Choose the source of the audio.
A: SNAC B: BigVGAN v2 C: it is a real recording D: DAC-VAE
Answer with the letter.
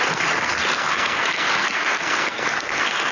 A